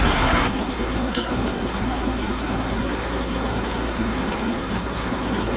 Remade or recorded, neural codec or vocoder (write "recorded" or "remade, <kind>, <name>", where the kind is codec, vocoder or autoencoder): remade, codec, SNAC